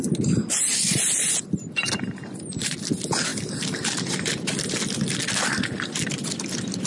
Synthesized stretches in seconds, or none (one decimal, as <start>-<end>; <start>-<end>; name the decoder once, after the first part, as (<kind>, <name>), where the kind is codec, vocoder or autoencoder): none